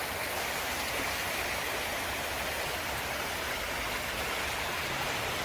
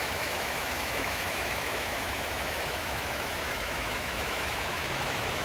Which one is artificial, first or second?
second